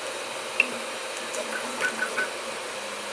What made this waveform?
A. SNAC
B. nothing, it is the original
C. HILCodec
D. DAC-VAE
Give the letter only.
B